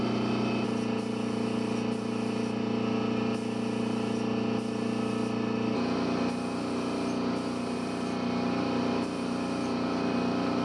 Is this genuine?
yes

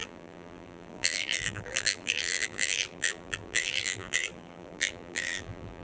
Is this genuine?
no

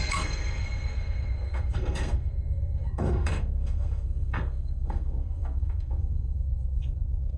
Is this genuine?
no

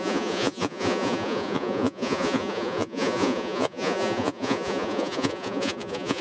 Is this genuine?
no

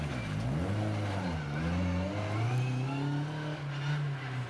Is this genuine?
yes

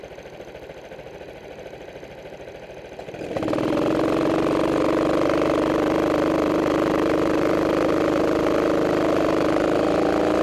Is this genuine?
yes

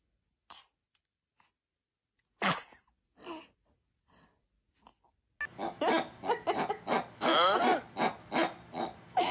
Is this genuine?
yes